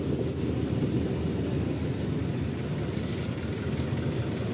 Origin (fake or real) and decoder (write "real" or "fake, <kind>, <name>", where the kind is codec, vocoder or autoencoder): real